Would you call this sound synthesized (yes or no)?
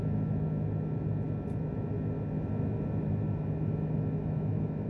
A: no